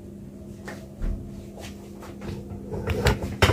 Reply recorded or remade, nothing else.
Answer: recorded